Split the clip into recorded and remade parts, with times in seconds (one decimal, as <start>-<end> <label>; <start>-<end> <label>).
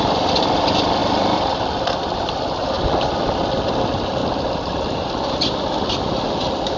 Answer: 0.0-1.0 recorded; 1.0-2.3 remade; 2.3-6.8 recorded